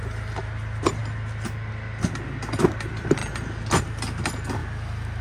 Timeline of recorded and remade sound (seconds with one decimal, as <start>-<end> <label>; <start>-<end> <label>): 0.0-1.0 recorded; 1.0-1.7 remade; 1.7-4.6 recorded; 4.6-5.2 remade